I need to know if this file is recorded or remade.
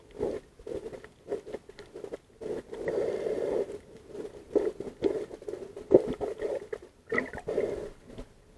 recorded